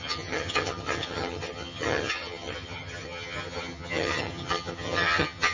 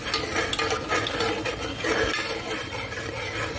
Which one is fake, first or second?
first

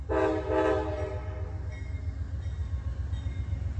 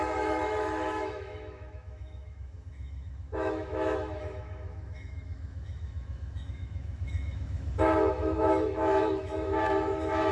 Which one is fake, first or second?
second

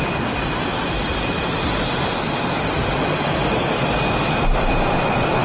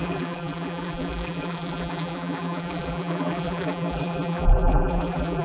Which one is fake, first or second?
second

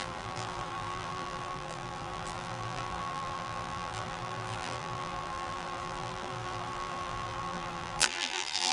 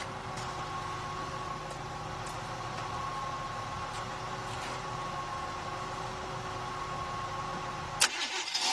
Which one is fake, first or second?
first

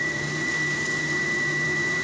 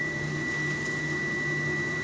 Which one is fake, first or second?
first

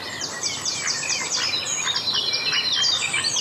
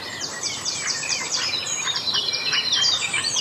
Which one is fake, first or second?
second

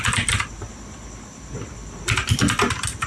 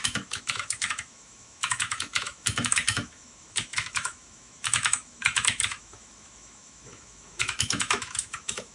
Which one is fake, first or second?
second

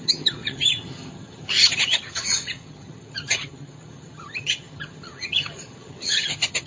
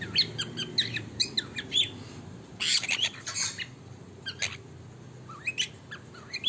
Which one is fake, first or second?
first